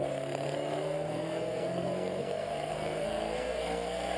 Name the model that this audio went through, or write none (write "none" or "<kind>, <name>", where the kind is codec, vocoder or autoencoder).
codec, SNAC